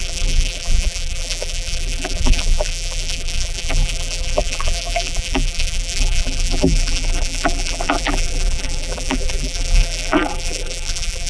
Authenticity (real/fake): fake